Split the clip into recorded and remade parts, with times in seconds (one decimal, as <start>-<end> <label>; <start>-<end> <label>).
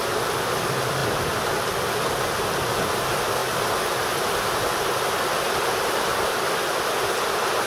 0.0-7.7 recorded